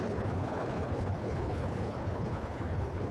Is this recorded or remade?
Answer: remade